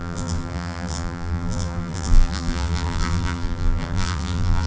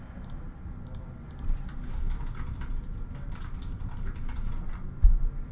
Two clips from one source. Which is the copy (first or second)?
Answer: first